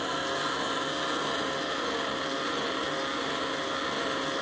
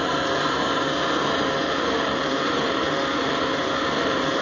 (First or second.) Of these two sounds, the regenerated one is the second